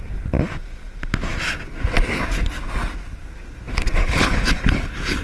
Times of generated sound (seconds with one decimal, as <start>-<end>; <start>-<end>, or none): 4.0-5.2

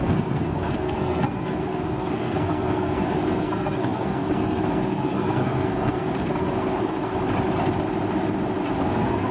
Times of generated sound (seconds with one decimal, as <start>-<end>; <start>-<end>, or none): 0.0-7.1; 8.8-9.3